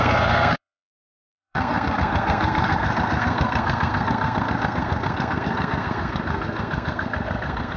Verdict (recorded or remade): remade